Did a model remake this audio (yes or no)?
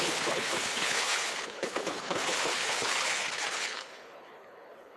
yes